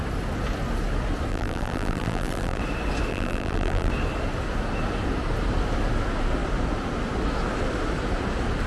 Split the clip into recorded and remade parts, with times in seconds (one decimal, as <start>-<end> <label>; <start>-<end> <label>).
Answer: 0.0-1.3 recorded; 1.3-2.6 remade; 2.6-3.1 recorded; 3.1-3.9 remade; 3.9-8.7 recorded